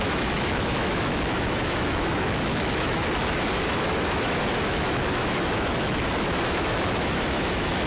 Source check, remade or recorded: remade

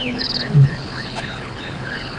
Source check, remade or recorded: remade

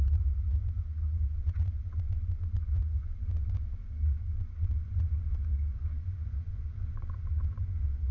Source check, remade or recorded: remade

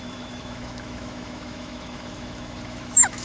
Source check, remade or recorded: remade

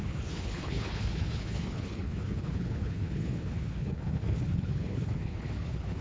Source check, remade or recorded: remade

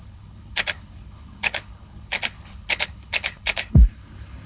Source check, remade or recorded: remade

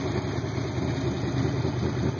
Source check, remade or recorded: recorded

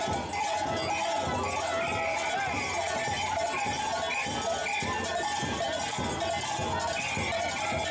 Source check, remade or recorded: recorded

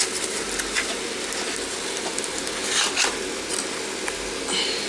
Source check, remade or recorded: recorded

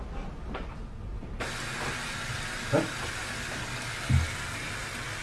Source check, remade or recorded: recorded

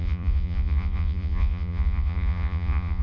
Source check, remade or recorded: remade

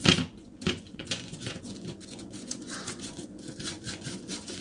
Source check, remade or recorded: remade